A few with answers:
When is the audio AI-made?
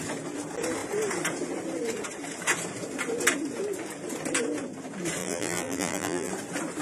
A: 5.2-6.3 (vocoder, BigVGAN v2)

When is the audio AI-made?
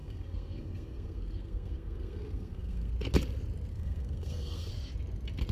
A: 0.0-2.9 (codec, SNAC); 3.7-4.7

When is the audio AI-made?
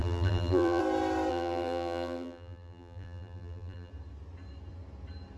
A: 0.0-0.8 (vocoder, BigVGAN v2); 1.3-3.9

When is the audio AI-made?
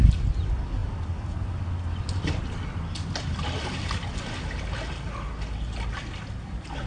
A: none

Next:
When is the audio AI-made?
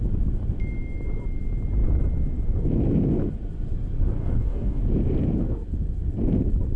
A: 4.2-4.8 (codec, DAC)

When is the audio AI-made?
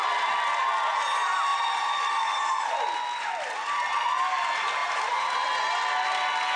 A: 1.5-3.3 (vocoder, BigVGAN v2); 4.8-5.5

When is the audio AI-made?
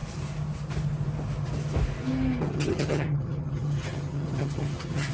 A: 2.4-5.1 (vocoder, HiFi-GAN)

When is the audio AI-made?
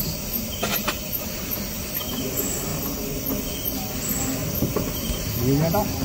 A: none